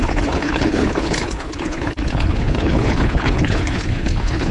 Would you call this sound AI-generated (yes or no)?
yes